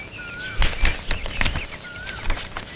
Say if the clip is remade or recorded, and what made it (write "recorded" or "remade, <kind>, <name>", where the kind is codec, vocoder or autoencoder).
recorded